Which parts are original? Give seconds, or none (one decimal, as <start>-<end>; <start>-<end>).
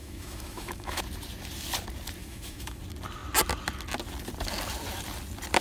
1.0-2.2; 2.8-5.6